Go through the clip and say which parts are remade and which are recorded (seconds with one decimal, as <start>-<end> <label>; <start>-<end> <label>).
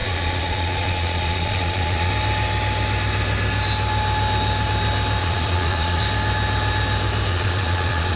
0.0-2.1 remade; 2.1-5.2 recorded; 5.2-6.0 remade; 6.0-7.3 recorded; 7.3-8.2 remade